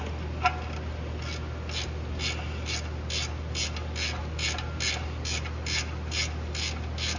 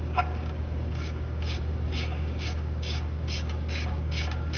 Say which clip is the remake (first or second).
second